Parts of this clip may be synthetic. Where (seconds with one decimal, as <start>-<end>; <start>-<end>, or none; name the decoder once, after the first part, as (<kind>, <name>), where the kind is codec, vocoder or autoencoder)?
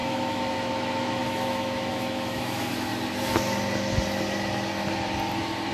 0.0-2.9 (autoencoder, DAC-VAE)